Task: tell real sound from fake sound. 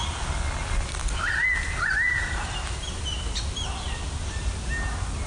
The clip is real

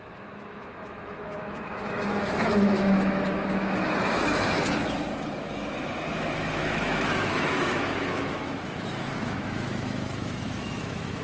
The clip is fake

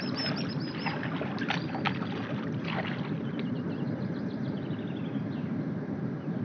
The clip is real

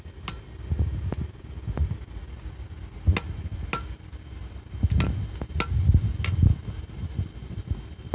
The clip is real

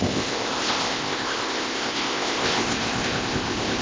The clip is fake